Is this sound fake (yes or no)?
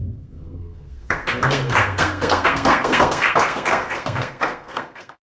yes